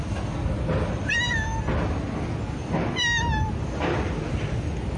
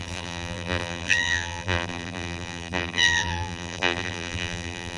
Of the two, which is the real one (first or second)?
first